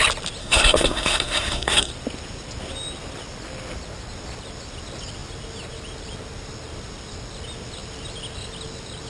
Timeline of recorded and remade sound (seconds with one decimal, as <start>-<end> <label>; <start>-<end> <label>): 0.0-0.4 recorded; 0.4-1.9 remade; 1.9-9.1 recorded